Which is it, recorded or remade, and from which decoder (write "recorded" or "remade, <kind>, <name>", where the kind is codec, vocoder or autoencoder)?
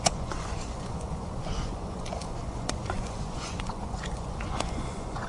remade, vocoder, Vocos